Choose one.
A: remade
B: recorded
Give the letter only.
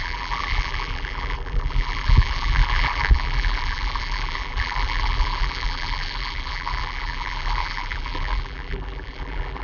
A